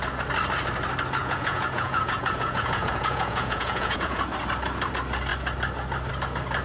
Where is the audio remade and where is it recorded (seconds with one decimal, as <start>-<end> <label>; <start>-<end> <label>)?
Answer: 0.0-1.2 recorded; 1.2-4.2 remade; 4.2-6.6 recorded